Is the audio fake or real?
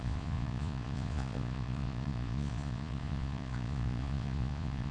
fake